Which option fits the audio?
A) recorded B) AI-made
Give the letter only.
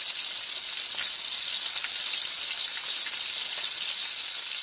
A